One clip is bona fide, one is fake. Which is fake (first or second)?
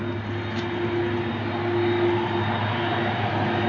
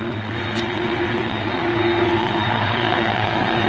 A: second